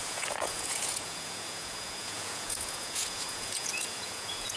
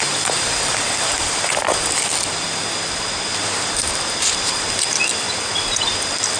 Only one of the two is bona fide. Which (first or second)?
second